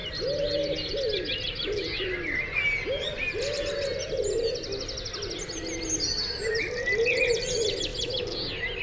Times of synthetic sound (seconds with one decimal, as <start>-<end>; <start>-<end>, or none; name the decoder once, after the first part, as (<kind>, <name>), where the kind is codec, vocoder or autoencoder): none